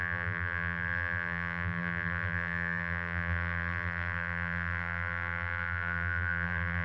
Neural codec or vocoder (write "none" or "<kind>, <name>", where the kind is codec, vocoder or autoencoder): vocoder, BigVGAN v2